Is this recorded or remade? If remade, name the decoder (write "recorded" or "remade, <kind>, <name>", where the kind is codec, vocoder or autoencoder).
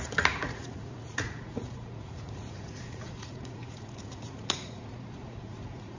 remade, vocoder, Vocos